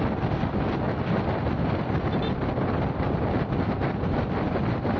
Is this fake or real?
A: real